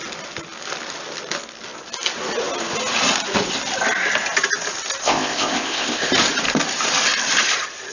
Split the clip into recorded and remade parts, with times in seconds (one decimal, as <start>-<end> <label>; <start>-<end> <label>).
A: 0.0-5.0 recorded; 5.0-6.1 remade; 6.1-7.9 recorded